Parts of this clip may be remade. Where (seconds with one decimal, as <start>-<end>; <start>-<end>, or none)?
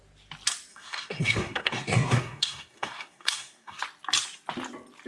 0.7-3.8